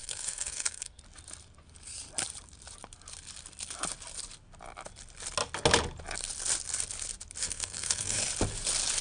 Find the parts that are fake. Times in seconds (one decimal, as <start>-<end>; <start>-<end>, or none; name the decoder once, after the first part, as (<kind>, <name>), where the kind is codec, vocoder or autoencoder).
0.0-1.0 (codec, SNAC); 7.4-8.2